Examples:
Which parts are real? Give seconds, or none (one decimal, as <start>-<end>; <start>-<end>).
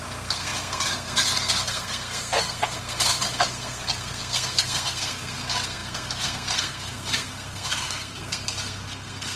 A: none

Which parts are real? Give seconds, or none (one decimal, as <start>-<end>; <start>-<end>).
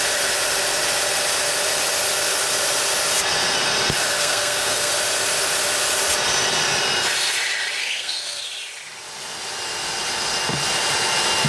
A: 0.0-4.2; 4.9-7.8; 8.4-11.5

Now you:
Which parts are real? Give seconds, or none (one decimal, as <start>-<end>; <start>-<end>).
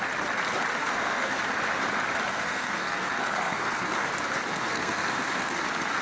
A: 0.0-0.8; 1.4-2.3; 4.1-4.5; 5.5-6.0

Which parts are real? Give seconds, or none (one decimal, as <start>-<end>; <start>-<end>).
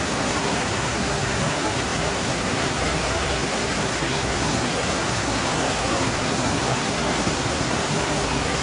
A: none